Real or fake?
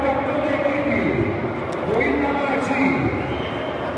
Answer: real